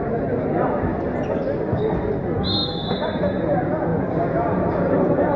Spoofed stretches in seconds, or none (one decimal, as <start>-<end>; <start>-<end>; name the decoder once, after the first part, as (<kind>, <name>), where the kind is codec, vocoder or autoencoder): 0.9-1.6 (vocoder, BigVGAN v2); 2.6-3.2